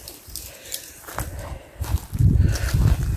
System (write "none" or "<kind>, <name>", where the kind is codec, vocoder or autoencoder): none